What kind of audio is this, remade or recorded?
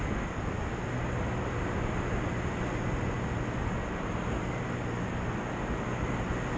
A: recorded